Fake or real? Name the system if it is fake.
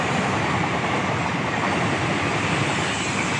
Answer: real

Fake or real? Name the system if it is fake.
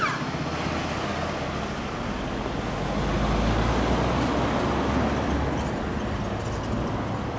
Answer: real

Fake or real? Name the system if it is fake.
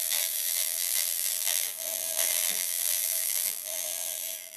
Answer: fake, vocoder, BigVGAN v2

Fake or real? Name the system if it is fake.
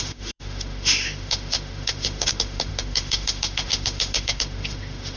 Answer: fake, autoencoder, DAC-VAE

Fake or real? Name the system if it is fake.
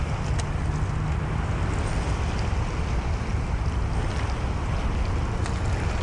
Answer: real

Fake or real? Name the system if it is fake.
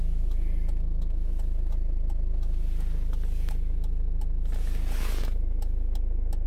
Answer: real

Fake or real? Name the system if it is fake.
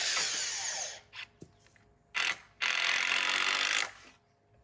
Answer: real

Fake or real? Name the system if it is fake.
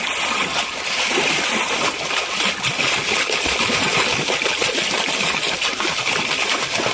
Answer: real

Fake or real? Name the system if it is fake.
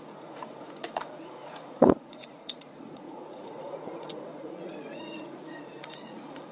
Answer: fake, vocoder, Vocos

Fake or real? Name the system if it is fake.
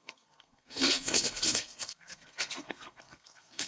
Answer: fake, codec, SNAC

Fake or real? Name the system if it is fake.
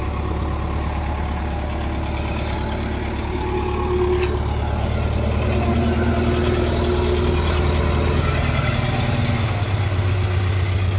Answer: real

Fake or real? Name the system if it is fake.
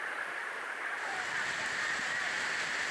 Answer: fake, vocoder, BigVGAN v2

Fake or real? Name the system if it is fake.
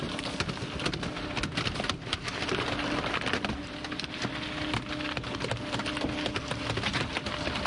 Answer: real